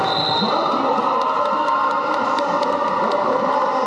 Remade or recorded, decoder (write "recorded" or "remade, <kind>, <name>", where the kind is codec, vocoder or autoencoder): recorded